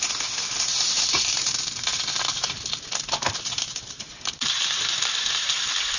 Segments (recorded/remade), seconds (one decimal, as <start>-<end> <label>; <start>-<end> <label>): 0.0-6.0 recorded